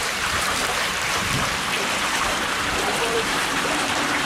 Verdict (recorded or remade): remade